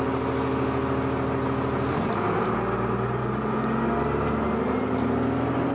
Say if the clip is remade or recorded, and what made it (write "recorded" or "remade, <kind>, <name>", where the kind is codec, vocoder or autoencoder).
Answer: recorded